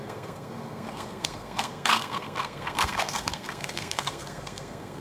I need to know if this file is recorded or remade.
remade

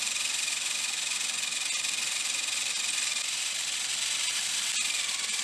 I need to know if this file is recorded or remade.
recorded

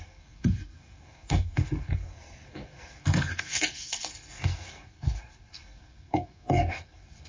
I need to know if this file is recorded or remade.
remade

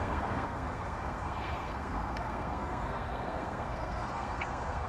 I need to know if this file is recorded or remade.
remade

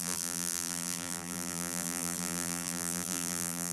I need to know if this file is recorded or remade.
remade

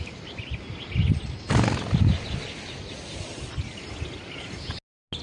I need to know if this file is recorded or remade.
recorded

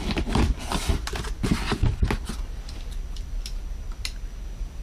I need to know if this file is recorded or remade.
remade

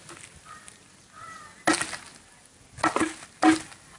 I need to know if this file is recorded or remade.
recorded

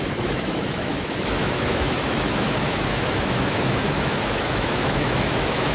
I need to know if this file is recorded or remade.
remade